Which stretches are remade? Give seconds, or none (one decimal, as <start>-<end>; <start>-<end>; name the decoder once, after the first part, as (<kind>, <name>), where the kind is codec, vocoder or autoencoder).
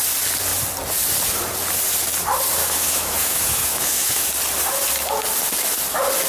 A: 2.6-4.3 (autoencoder, DAC-VAE)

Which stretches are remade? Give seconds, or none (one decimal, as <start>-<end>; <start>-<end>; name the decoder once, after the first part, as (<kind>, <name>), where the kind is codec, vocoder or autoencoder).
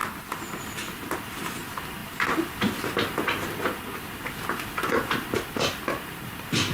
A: none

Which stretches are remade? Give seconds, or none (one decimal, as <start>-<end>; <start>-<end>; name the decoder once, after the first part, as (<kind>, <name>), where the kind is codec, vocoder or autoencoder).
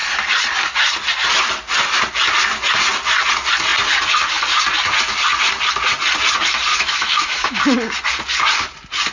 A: 6.7-7.6 (autoencoder, DAC-VAE)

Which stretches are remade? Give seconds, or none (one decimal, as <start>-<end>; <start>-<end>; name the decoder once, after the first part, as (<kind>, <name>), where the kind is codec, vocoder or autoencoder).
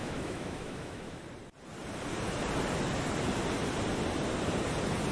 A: 0.0-1.2 (autoencoder, DAC-VAE)